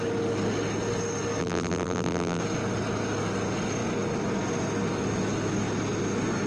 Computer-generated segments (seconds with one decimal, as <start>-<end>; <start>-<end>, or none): 1.4-2.4